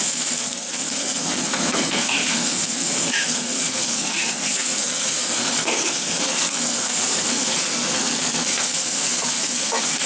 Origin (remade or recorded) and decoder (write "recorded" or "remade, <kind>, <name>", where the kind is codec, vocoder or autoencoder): remade, codec, SNAC